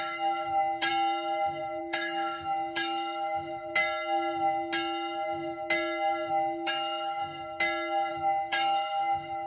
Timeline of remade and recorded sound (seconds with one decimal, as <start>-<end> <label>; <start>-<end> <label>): 0.0-0.9 remade; 0.9-1.8 recorded; 1.8-3.7 remade; 3.7-6.3 recorded; 6.3-7.2 remade; 7.2-8.1 recorded; 8.1-9.5 remade